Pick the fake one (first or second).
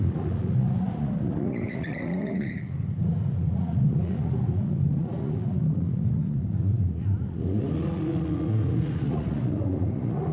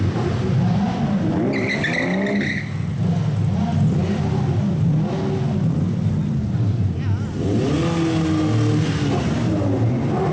first